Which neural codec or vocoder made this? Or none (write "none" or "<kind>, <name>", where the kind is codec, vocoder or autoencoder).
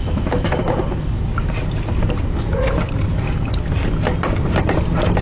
none